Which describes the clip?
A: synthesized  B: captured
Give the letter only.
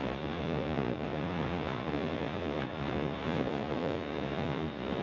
A